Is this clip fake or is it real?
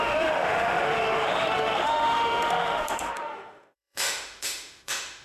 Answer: fake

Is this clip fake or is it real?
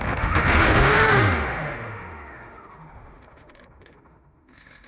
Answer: fake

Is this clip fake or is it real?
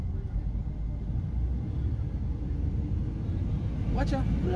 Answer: real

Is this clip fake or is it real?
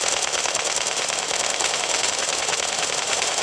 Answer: fake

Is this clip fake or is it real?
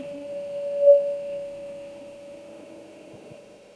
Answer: fake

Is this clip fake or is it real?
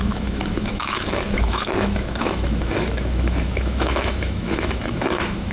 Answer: fake